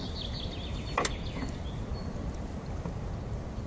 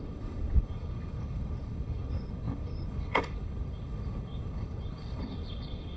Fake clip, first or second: second